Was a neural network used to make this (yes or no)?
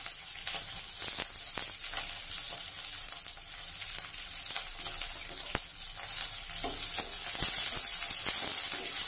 no